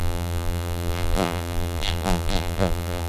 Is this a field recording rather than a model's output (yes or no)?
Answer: no